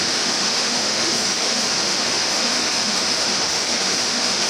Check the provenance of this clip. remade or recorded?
remade